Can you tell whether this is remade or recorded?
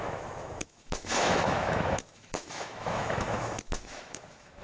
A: remade